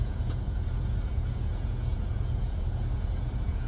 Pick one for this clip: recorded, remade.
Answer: remade